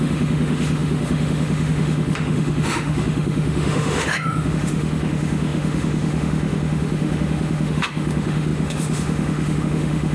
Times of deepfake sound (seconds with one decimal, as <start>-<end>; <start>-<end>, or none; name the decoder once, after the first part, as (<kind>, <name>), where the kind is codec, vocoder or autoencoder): 0.0-10.1 (autoencoder, DAC-VAE)